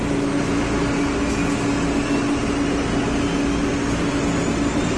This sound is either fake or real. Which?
real